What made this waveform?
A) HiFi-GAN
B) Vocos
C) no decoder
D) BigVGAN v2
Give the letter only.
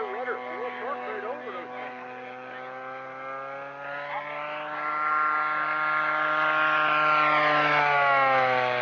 C